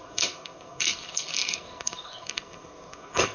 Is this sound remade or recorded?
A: remade